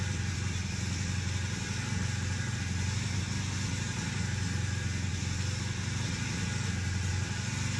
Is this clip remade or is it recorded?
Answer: recorded